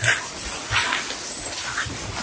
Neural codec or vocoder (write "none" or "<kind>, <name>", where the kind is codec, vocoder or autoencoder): none